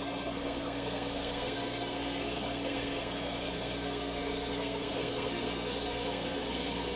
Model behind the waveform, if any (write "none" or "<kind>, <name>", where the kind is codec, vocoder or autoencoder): codec, SNAC